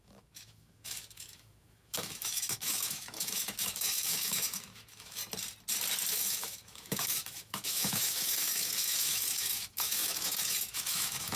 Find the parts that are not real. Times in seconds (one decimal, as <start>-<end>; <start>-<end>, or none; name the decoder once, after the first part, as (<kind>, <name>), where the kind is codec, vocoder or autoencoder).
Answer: 0.0-5.2 (autoencoder, DAC-VAE); 6.1-11.4